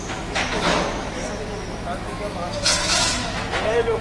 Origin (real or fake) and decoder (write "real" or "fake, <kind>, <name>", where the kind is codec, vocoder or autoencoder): fake, autoencoder, DAC-VAE